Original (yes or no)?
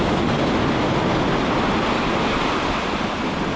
yes